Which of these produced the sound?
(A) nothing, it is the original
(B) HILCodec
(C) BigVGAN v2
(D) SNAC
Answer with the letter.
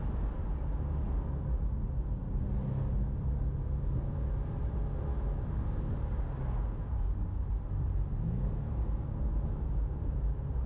A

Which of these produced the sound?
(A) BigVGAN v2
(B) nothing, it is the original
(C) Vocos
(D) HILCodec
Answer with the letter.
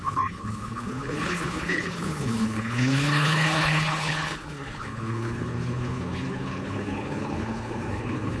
D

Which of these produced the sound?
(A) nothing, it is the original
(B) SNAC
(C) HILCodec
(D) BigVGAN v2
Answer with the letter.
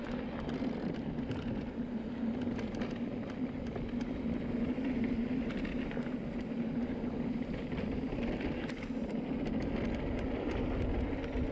A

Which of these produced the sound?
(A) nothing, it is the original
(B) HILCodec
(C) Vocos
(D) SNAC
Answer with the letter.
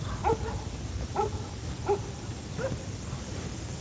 A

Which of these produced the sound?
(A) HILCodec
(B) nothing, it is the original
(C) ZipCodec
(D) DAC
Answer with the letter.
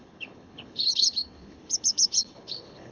A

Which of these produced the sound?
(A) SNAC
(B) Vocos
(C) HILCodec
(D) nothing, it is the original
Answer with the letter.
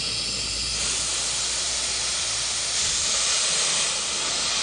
D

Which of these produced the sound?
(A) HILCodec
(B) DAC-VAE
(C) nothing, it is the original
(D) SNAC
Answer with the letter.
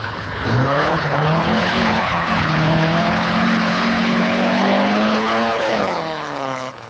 A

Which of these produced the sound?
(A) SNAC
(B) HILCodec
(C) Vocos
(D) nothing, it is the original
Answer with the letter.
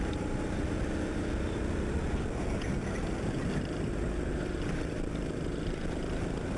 D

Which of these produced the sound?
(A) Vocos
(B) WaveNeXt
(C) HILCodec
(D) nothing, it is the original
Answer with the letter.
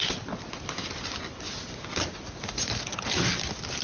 D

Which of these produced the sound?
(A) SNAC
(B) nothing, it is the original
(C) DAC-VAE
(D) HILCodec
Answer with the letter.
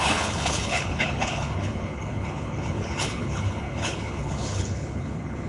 D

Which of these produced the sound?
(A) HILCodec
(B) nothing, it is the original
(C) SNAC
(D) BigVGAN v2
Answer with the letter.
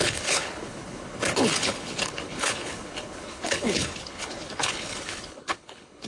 A